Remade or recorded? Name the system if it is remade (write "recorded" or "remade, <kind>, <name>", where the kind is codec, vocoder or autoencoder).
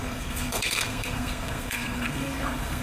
remade, codec, SNAC